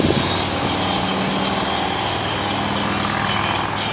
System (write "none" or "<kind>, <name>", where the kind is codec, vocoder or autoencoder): none